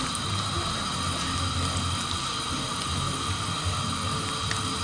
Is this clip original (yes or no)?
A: yes